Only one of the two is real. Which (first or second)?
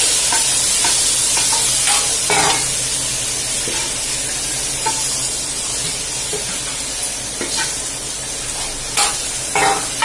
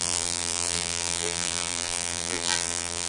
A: first